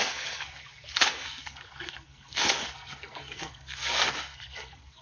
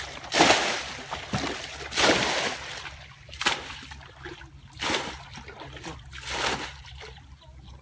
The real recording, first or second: second